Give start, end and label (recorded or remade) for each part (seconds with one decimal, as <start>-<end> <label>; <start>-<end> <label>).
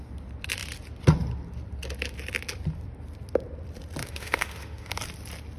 0.0-4.0 recorded; 4.0-4.9 remade; 4.9-5.6 recorded